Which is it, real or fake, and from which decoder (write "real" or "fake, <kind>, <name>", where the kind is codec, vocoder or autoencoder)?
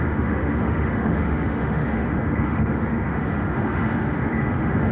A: fake, autoencoder, DAC-VAE